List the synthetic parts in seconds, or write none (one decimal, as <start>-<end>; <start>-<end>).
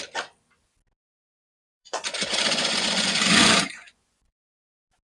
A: 1.3-4.4